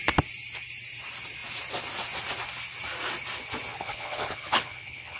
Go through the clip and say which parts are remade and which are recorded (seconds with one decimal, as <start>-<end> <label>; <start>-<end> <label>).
0.0-3.7 recorded; 3.7-5.2 remade